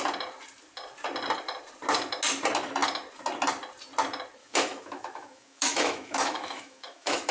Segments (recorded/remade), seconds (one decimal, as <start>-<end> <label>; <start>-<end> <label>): 0.0-4.4 recorded; 4.4-7.3 remade